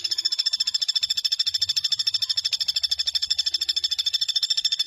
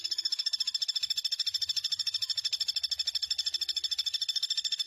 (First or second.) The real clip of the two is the second